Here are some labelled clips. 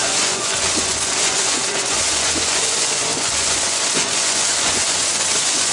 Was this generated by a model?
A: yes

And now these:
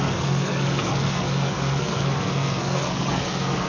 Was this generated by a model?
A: yes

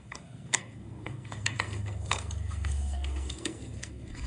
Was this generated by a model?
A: yes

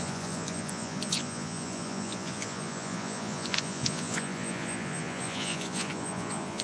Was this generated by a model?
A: yes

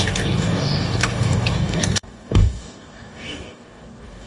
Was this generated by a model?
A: yes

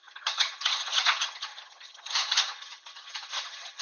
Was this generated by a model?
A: yes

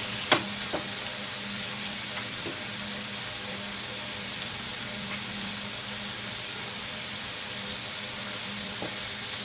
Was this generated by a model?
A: no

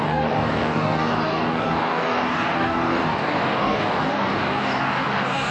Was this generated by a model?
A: yes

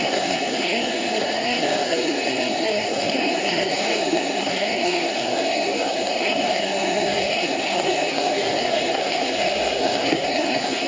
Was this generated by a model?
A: yes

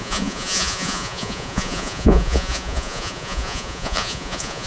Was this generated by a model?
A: yes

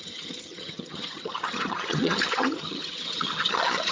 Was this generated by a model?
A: yes